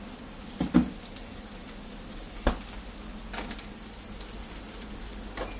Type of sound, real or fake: real